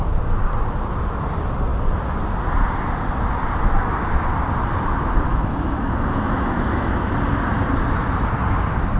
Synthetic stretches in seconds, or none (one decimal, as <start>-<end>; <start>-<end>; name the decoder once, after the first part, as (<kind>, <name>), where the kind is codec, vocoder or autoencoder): 5.3-7.1 (autoencoder, DAC-VAE)